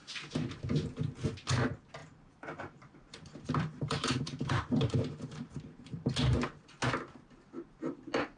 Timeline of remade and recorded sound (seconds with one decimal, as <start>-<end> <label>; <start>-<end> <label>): 0.0-2.0 recorded; 2.0-6.1 remade; 6.1-8.4 recorded